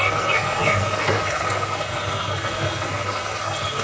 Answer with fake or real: fake